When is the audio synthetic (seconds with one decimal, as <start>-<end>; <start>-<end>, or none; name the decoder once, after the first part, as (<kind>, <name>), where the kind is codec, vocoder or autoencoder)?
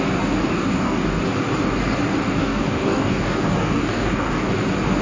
0.5-1.2 (codec, DAC); 2.4-4.5